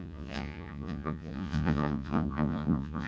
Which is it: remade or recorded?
remade